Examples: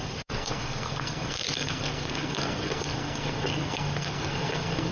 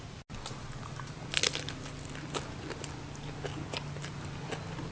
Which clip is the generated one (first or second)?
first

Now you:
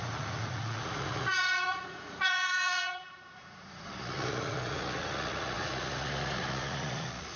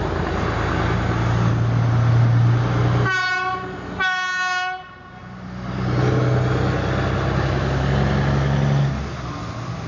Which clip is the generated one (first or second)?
first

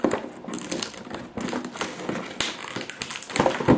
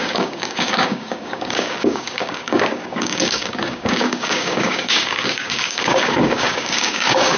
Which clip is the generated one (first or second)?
second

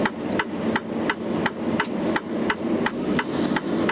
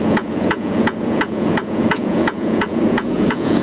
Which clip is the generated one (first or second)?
second